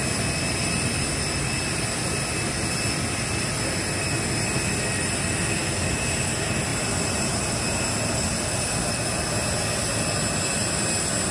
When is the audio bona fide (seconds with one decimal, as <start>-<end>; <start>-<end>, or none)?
0.0-6.7; 7.4-11.3